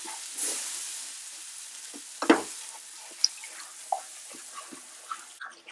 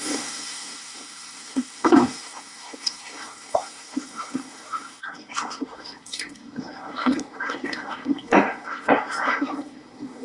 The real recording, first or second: first